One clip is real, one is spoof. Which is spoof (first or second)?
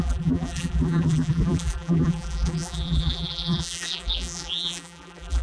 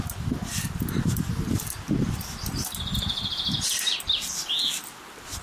first